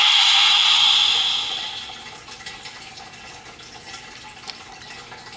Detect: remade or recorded recorded